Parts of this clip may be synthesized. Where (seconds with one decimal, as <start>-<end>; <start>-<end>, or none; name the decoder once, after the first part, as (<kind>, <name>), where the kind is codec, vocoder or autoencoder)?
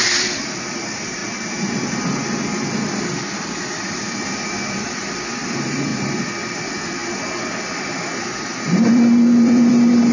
0.0-1.2 (vocoder, BigVGAN v2); 2.5-10.1